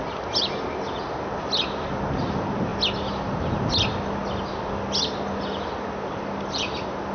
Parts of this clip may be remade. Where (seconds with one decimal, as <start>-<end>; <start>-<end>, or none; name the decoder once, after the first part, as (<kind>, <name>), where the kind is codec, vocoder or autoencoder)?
none

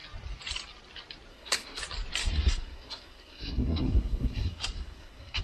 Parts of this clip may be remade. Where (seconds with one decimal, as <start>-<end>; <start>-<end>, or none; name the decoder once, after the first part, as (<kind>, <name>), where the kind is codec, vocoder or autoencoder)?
1.3-1.8 (codec, SNAC); 2.2-5.4

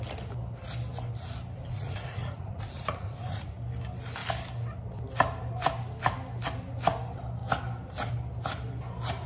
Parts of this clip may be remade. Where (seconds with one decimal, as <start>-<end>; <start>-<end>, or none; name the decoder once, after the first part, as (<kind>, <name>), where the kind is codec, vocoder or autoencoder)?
1.6-3.5 (vocoder, Vocos)

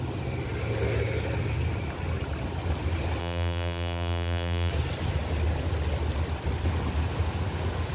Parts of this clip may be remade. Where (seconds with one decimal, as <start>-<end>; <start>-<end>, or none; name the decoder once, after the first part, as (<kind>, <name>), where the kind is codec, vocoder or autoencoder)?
3.2-4.7 (vocoder, BigVGAN v2)

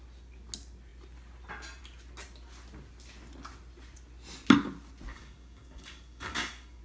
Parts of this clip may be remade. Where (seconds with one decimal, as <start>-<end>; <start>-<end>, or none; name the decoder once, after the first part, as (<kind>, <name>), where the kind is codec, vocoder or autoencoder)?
5.1-6.8 (codec, DAC)

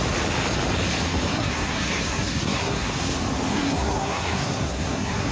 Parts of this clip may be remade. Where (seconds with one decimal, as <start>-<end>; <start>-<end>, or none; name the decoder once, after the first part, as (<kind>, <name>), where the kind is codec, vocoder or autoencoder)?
1.3-2.9 (codec, SNAC); 3.5-5.3